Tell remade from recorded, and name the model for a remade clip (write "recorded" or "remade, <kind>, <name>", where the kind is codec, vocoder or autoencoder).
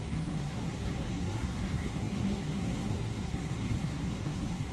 remade, codec, SNAC